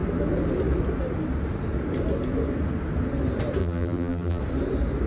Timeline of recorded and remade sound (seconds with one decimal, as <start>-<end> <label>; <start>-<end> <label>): 0.0-3.6 recorded; 3.6-4.4 remade; 4.4-5.1 recorded